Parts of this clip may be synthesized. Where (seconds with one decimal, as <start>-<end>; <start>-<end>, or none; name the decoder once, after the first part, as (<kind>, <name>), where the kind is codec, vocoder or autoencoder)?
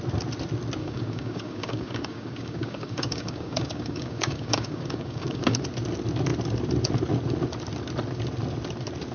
0.8-5.6 (codec, DAC)